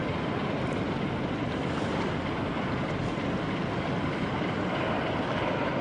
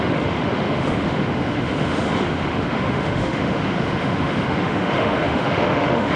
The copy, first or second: second